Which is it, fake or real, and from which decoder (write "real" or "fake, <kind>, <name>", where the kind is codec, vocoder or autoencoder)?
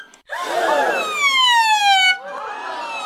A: real